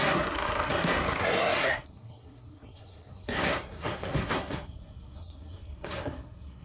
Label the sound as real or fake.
fake